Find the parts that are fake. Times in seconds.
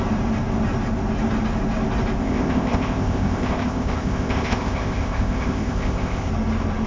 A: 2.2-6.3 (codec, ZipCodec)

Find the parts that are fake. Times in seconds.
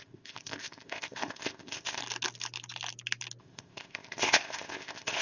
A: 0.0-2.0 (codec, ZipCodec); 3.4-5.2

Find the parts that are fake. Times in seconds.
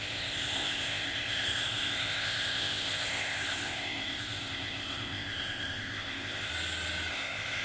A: 0.0-6.5 (codec, ZipCodec); 7.1-7.6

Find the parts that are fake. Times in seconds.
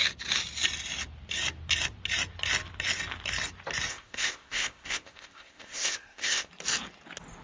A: 3.9-6.5 (codec, ZipCodec)